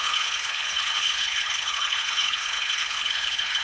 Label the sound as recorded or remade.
remade